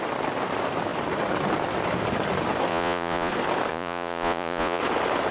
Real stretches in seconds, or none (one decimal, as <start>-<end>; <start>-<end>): 0.0-2.7; 3.3-3.7; 4.8-5.3